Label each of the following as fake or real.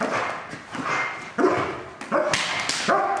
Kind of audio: real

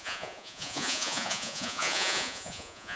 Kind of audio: fake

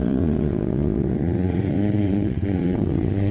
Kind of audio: fake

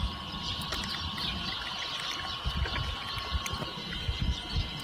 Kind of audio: real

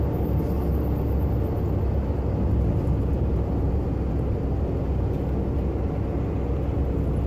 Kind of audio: real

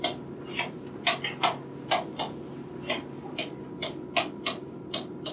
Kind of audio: real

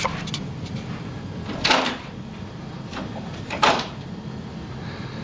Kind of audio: fake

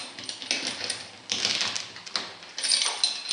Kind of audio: real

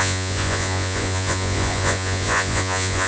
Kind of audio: fake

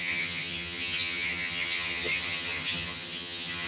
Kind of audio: fake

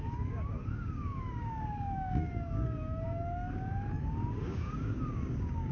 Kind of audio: fake